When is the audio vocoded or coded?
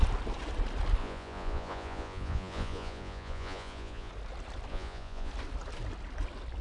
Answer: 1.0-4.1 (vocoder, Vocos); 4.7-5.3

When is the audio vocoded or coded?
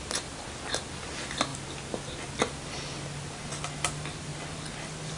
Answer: none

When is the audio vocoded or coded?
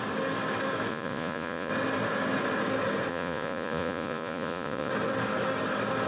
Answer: 0.9-1.7 (vocoder, Vocos); 3.1-4.9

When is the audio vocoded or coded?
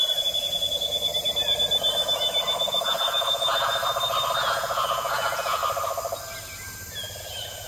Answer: 0.0-1.1 (vocoder, Vocos); 2.6-3.8; 4.4-5.6; 7.2-7.7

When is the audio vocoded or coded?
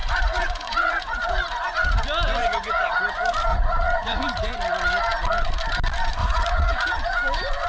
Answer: 0.0-2.0 (vocoder, Vocos); 2.4-3.0; 3.5-4.5; 6.2-7.0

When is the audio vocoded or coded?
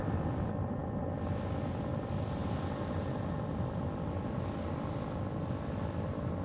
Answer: none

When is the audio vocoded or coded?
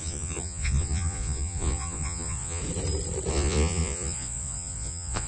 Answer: 0.0-2.6 (vocoder, Vocos); 3.3-5.3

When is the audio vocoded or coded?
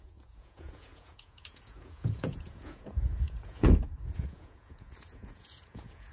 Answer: 0.0-6.1 (vocoder, Vocos)